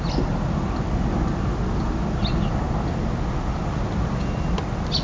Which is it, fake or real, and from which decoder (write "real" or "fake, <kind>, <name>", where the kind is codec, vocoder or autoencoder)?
real